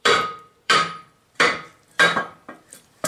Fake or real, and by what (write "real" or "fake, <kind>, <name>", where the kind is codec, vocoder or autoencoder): fake, vocoder, BigVGAN v2